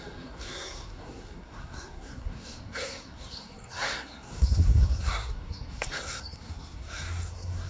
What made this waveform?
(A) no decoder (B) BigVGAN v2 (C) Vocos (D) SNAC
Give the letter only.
D